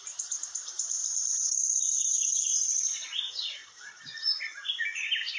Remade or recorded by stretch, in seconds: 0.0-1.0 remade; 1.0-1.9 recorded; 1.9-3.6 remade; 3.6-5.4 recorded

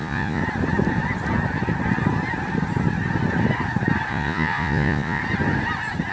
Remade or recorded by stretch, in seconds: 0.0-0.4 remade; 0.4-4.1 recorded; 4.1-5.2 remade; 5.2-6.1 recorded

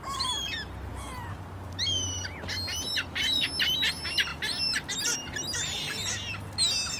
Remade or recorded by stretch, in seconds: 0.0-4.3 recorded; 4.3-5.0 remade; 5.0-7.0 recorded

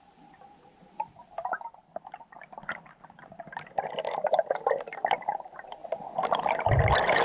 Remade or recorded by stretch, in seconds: 0.0-0.8 remade; 0.8-5.1 recorded; 5.1-5.8 remade; 5.8-6.5 recorded; 6.5-7.2 remade